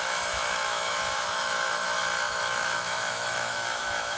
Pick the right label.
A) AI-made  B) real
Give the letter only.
A